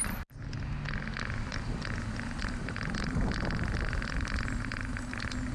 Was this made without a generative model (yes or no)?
yes